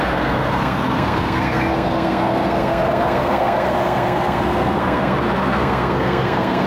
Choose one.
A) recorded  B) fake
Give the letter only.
B